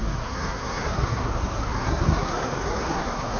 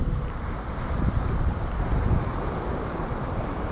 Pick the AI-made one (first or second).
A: first